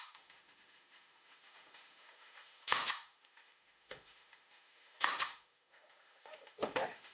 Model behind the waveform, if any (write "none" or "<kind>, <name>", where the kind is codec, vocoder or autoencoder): autoencoder, DAC-VAE